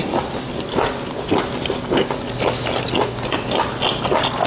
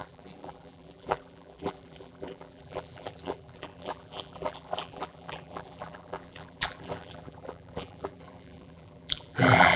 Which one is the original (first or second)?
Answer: first